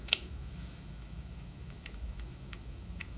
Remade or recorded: remade